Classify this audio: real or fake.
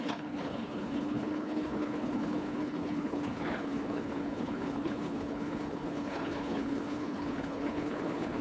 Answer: fake